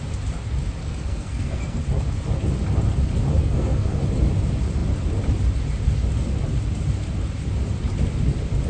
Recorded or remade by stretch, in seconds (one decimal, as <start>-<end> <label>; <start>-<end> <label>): 0.0-0.8 recorded; 0.8-1.8 remade; 1.8-3.4 recorded; 3.4-4.0 remade; 4.0-8.7 recorded